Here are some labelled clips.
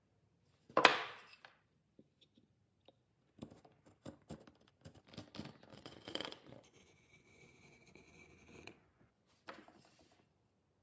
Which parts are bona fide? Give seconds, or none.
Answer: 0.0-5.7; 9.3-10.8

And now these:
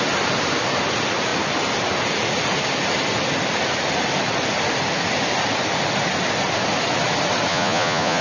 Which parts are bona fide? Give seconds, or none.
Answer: 0.0-7.5